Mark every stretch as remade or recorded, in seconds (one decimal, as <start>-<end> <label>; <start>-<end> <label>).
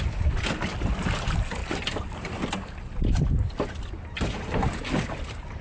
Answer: 0.0-5.6 recorded